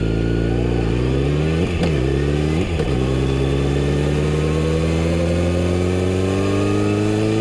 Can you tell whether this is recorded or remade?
recorded